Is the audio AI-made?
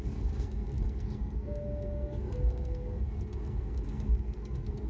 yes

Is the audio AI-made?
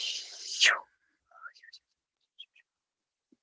yes